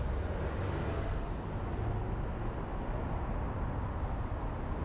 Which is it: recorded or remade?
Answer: recorded